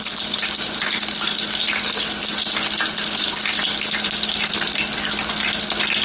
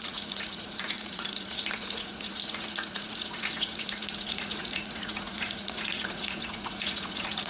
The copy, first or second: second